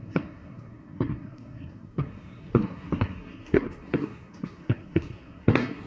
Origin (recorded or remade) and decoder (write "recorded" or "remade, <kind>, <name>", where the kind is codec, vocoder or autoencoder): remade, codec, SNAC